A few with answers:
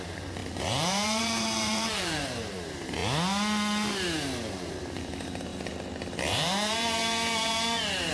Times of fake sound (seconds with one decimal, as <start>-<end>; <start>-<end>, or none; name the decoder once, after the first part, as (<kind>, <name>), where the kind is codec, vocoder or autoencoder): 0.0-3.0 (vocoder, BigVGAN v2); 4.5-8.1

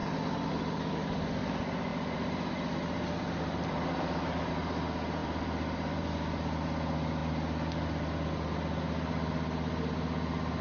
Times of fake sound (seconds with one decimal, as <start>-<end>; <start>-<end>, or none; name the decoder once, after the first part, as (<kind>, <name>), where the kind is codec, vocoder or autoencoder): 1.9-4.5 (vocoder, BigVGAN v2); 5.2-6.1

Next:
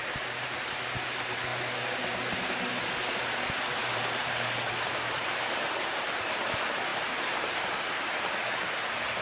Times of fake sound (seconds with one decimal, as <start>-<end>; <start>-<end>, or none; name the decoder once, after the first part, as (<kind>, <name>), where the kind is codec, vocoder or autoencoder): 3.8-5.7 (vocoder, BigVGAN v2); 6.9-8.2